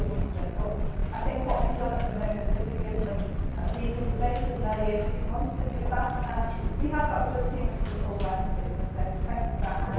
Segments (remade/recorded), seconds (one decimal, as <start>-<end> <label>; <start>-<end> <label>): 0.0-3.6 remade; 3.6-5.4 recorded; 5.4-6.4 remade; 6.4-9.3 recorded; 9.3-10.0 remade